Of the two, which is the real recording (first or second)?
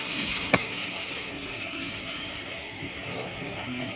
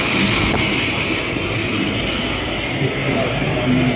second